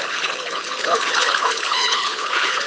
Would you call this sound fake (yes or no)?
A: yes